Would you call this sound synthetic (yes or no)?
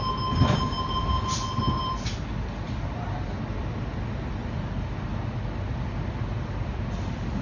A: no